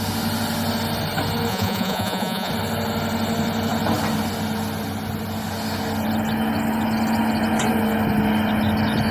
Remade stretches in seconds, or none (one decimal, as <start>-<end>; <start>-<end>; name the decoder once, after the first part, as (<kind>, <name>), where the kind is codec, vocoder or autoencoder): 1.5-2.5 (vocoder, Vocos)